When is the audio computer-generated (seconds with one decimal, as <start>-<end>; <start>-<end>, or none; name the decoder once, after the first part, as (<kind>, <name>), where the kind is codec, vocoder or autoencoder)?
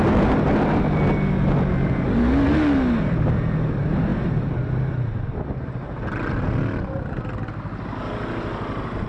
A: none